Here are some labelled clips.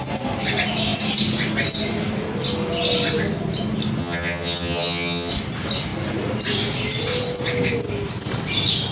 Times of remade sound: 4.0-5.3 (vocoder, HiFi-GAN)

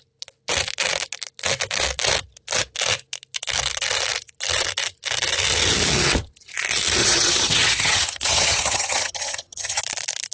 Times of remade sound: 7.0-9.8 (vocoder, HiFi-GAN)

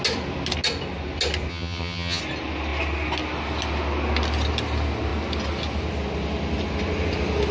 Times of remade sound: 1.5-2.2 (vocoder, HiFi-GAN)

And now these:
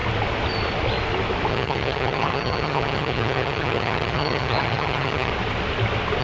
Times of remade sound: 1.5-5.3 (vocoder, HiFi-GAN)

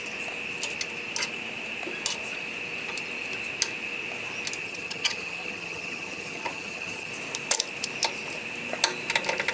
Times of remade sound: 4.6-7.1 (vocoder, HiFi-GAN)

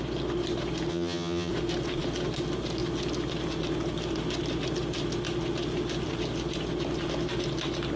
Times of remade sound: 0.9-1.5 (vocoder, HiFi-GAN)